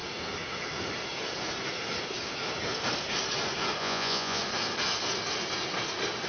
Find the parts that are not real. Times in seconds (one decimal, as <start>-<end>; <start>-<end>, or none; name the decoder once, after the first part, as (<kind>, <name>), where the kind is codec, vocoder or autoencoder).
3.8-4.4 (vocoder, Vocos)